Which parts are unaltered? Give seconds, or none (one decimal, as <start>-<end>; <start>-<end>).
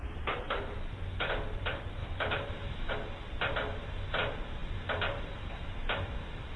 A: 0.0-2.0; 2.9-6.6